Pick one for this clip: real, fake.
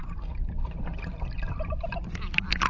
real